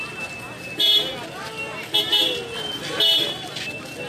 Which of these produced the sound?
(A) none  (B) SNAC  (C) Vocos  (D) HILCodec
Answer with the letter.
A